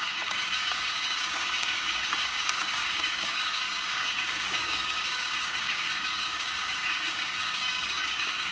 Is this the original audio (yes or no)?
no